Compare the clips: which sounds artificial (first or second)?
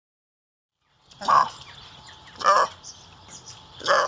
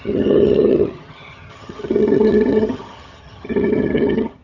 second